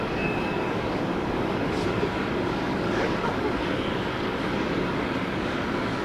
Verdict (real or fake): fake